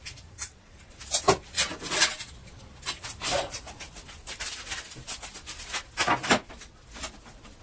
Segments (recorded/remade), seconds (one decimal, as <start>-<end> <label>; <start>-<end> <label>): 0.0-7.6 recorded

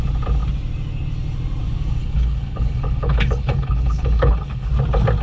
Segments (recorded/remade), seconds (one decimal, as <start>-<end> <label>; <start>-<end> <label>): 0.0-2.0 recorded; 2.0-4.7 remade; 4.7-5.2 recorded

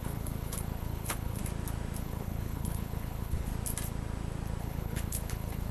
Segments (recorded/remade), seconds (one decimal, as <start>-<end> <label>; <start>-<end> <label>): 0.0-1.4 remade; 1.4-2.0 recorded; 2.0-3.5 remade; 3.5-4.6 recorded; 4.6-5.7 remade

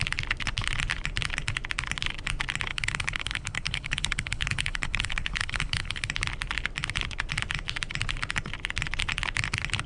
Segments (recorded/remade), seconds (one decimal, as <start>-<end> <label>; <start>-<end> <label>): 0.0-2.7 recorded; 2.7-6.1 remade; 6.1-9.9 recorded